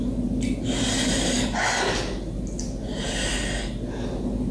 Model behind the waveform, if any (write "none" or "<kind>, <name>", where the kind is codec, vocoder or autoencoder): none